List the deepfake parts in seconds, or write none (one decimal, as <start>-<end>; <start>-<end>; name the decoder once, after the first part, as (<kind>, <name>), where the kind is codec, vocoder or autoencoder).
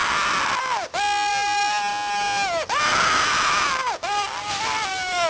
none